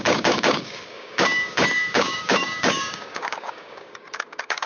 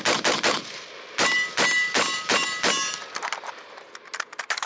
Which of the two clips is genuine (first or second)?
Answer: second